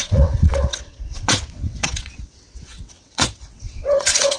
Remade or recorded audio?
remade